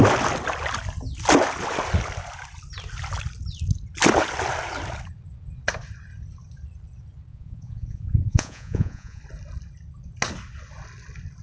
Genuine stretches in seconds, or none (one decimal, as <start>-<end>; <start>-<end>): 0.0-7.3; 9.2-11.4